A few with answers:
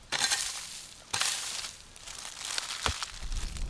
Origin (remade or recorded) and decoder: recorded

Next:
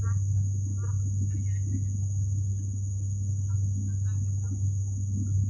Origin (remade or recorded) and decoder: recorded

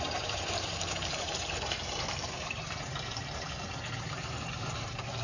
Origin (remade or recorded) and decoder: remade, vocoder, BigVGAN v2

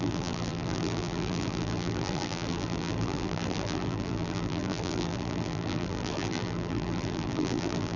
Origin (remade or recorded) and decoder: remade, vocoder, BigVGAN v2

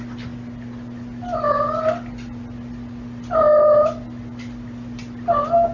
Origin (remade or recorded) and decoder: recorded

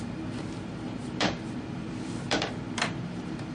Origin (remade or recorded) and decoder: remade, vocoder, BigVGAN v2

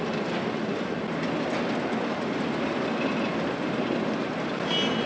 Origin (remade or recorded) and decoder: recorded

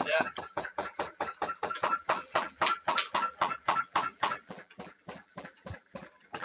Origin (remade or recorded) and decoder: remade, vocoder, BigVGAN v2